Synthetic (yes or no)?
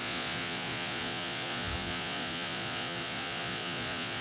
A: yes